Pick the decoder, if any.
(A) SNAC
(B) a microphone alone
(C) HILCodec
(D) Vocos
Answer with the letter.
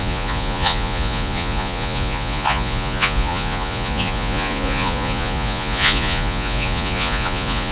D